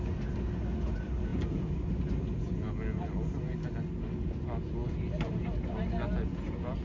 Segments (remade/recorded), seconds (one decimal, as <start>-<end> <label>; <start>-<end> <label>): 0.0-6.8 recorded